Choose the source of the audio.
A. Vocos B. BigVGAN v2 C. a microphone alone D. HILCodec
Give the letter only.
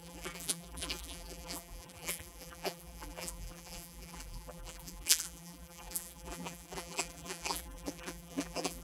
B